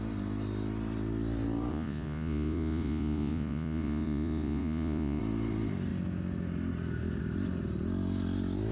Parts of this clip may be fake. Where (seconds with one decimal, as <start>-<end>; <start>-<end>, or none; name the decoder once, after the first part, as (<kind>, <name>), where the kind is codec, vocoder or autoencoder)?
1.7-5.2 (vocoder, Vocos)